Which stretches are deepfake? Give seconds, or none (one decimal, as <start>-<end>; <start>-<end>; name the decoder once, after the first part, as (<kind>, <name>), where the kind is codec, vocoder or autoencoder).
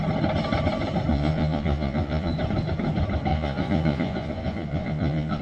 1.1-2.3 (vocoder, Vocos); 3.3-5.4